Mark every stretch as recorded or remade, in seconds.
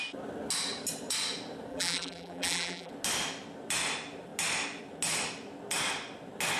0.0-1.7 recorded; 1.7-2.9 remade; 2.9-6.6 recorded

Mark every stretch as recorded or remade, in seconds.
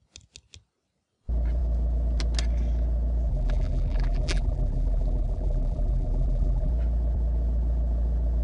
0.0-3.3 recorded; 3.3-6.7 remade; 6.7-8.4 recorded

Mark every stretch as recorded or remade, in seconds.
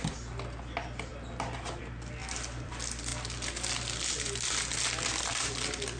0.0-2.2 recorded; 2.2-2.7 remade; 2.7-6.0 recorded